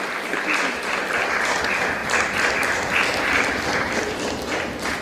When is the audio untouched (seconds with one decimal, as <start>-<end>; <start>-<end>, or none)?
0.0-5.0